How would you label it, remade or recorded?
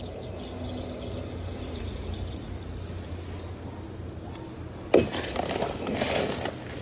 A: recorded